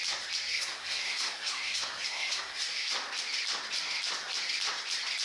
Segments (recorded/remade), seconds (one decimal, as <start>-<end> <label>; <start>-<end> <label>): 0.0-0.5 recorded; 0.5-2.9 remade; 2.9-5.2 recorded